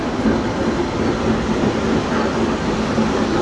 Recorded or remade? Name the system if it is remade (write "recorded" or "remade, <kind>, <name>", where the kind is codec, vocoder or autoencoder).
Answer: recorded